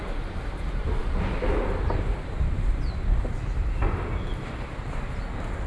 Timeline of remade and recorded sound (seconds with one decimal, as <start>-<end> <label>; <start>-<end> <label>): 0.0-5.7 recorded

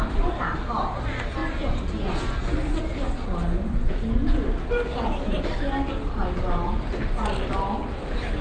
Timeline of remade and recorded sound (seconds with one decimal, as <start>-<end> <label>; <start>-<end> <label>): 0.0-8.4 recorded